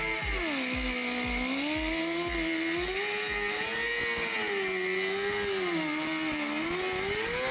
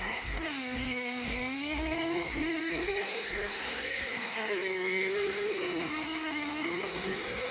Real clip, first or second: first